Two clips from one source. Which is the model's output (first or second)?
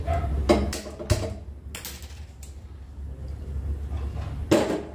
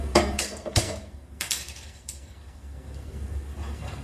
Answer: second